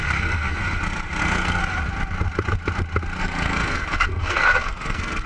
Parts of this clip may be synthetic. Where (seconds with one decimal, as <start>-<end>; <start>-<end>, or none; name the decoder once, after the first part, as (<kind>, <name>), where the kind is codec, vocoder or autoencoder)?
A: 0.0-0.6 (codec, SNAC); 1.2-1.6; 3.2-5.3